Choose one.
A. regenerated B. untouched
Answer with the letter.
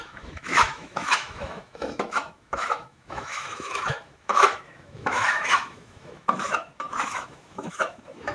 A